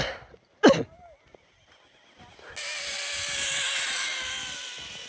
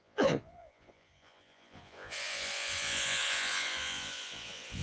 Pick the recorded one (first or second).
first